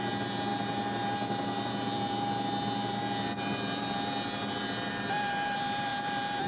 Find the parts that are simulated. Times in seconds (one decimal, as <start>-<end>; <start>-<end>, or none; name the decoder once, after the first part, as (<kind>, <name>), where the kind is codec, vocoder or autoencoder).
none